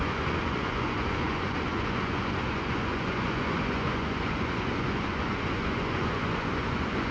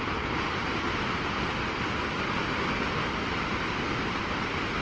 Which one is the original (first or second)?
second